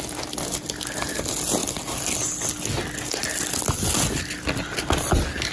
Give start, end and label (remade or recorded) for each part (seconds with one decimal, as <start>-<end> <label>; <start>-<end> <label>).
0.0-5.5 recorded